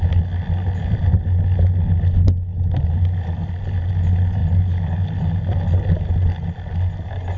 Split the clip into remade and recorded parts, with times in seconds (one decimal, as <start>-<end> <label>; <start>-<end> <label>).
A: 0.0-7.4 recorded